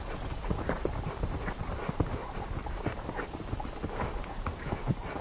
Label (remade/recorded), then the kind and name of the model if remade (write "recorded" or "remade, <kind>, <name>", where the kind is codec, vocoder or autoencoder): recorded